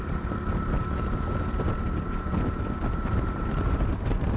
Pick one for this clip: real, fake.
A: fake